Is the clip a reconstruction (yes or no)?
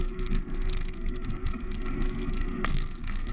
yes